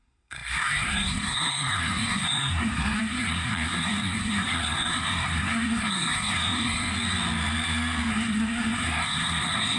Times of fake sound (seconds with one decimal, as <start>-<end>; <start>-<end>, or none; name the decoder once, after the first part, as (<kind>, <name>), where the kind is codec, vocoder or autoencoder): 0.0-6.9 (codec, SNAC); 8.1-9.8